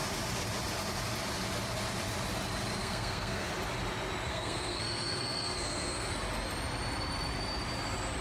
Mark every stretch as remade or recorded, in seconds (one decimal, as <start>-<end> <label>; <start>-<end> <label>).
0.0-2.8 recorded; 2.8-3.5 remade; 3.5-4.3 recorded; 4.3-6.1 remade; 6.1-8.2 recorded